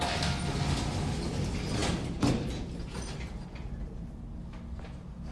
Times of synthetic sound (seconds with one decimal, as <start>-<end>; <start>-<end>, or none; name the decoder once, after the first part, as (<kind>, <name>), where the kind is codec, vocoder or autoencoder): none